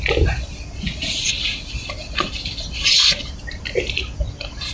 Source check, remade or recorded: recorded